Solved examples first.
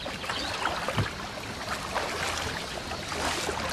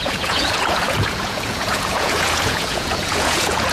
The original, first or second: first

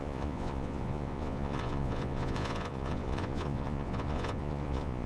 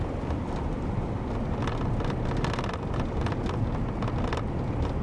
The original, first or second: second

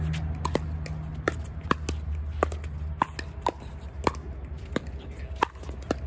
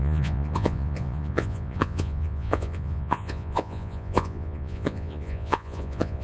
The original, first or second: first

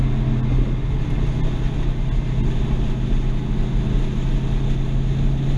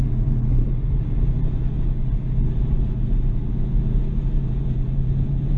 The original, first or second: first